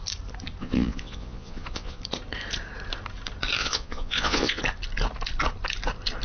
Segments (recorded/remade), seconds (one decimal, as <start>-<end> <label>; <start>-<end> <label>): 0.0-0.6 recorded; 0.6-2.0 remade; 2.0-3.6 recorded; 3.6-4.6 remade; 4.6-6.2 recorded